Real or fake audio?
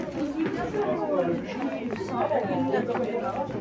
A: real